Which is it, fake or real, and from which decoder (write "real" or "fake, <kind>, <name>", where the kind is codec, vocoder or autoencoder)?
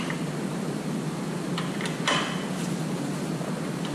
real